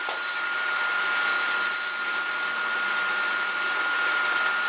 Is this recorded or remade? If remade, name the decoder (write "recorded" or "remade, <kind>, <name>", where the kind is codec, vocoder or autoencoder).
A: remade, vocoder, BigVGAN v2